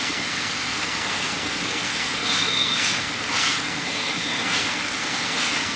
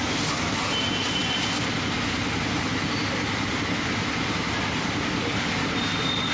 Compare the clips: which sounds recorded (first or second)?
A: second